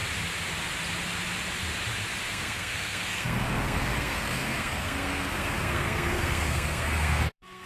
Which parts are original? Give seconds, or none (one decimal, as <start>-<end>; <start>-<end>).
0.0-2.3